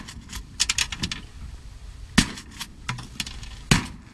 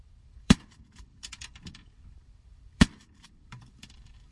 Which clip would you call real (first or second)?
first